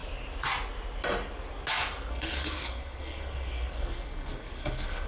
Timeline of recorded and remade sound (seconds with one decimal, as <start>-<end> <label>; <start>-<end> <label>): 0.0-2.1 recorded; 2.1-5.1 remade